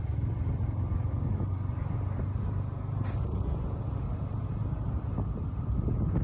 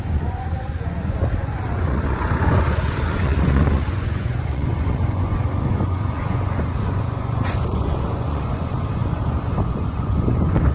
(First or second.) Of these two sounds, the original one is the first